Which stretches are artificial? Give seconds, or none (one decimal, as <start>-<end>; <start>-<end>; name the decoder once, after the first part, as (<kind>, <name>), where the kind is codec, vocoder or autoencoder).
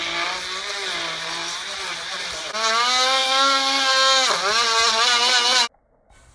1.4-2.5 (vocoder, BigVGAN v2)